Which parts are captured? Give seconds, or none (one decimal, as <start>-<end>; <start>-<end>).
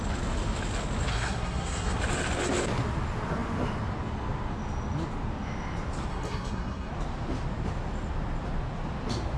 0.0-1.1; 2.0-6.1; 6.9-9.4